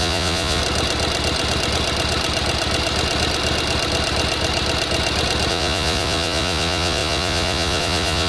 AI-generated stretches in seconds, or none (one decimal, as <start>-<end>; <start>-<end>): 0.0-0.6; 5.5-8.3